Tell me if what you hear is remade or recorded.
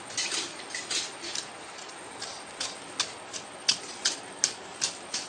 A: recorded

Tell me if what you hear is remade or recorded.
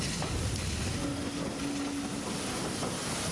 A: recorded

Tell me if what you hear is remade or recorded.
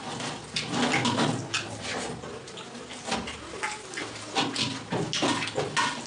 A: recorded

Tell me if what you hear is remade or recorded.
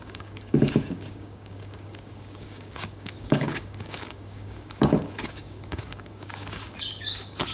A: remade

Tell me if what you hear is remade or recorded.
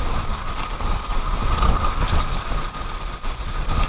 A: recorded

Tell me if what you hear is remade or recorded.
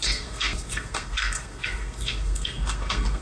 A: remade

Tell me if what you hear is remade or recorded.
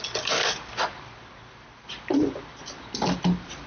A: remade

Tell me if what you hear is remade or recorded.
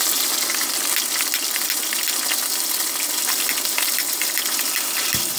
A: recorded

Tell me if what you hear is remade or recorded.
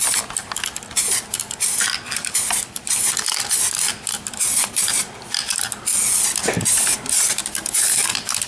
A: recorded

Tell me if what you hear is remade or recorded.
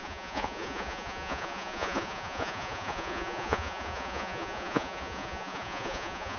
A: remade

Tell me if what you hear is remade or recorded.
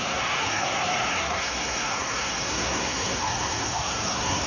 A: remade